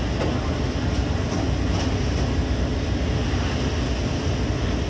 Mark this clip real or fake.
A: real